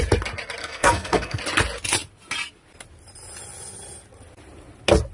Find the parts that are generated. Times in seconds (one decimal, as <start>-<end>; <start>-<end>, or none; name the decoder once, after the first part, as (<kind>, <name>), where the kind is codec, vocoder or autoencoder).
0.6-1.4 (codec, SNAC)